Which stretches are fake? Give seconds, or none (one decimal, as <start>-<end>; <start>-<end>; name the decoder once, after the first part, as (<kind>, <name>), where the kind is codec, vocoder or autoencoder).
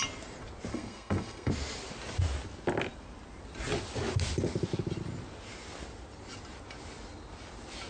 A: 0.7-1.5 (codec, SNAC)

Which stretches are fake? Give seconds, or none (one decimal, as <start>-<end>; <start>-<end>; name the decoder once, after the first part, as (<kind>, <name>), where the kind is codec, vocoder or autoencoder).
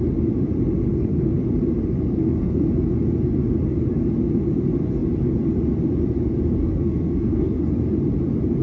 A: 0.9-1.4 (codec, SNAC); 2.1-2.7; 6.6-7.6